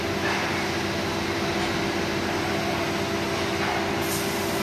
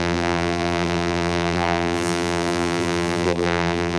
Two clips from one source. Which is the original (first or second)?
first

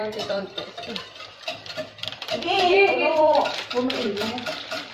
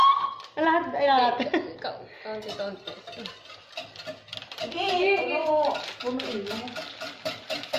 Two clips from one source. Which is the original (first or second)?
second